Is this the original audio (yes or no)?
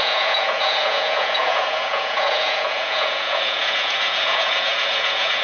no